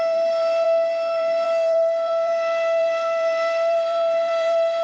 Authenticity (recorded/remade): remade